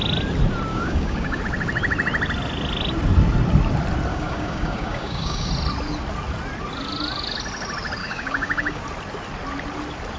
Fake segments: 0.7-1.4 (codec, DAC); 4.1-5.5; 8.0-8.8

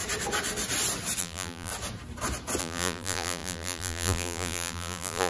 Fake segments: 1.2-1.7 (vocoder, BigVGAN v2); 2.6-5.3

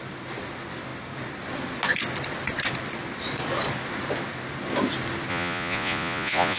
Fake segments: 5.3-6.6 (vocoder, Vocos)

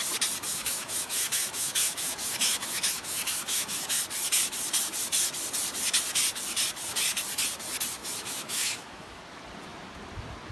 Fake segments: 0.5-4.0 (autoencoder, DAC-VAE); 8.0-9.2

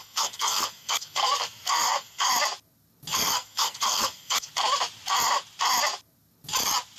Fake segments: 0.0-2.3 (codec, SNAC); 3.1-4.5

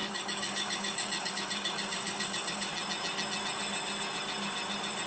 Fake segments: 0.0-2.7 (codec, DAC)

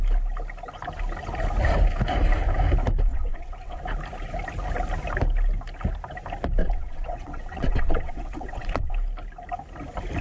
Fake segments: 3.1-3.8 (vocoder, WaveNeXt); 6.6-8.9